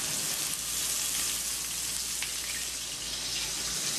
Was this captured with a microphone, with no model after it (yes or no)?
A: yes